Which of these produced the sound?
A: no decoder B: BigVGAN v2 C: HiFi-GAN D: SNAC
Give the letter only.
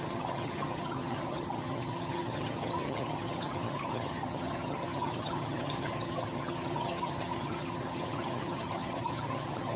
C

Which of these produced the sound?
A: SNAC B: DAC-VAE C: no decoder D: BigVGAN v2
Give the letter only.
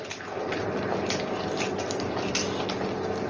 C